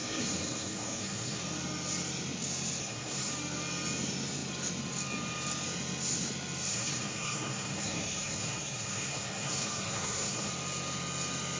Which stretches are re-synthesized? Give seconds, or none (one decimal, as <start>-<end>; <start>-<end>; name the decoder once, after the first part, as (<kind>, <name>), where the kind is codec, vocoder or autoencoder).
0.0-1.4 (codec, SNAC); 2.8-3.3; 6.7-10.5